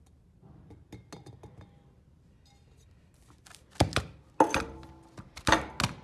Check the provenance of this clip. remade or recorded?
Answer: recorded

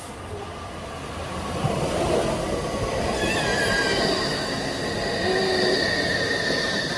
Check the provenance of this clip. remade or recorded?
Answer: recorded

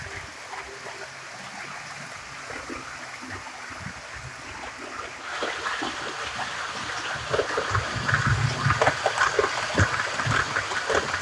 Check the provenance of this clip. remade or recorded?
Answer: recorded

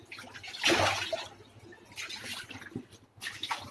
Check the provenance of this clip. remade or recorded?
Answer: recorded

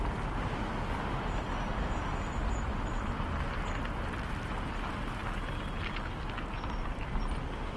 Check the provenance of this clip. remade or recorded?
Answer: recorded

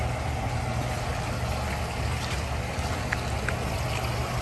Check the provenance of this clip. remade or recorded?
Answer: recorded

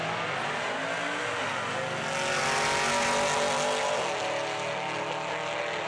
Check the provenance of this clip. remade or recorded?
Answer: recorded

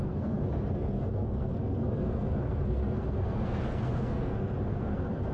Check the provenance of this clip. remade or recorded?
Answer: remade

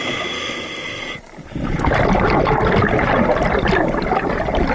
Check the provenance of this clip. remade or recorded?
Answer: recorded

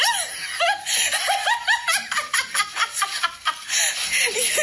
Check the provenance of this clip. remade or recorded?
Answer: recorded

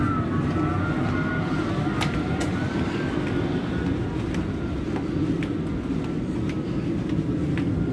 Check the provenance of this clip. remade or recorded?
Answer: recorded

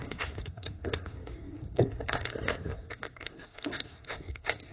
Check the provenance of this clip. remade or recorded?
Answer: remade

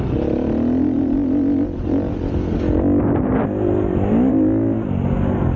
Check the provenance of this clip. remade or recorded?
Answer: recorded